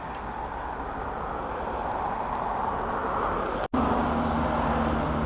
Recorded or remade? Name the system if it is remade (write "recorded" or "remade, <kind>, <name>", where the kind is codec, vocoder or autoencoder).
recorded